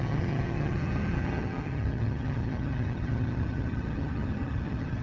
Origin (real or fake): fake